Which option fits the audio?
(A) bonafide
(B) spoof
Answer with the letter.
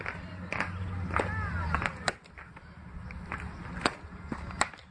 A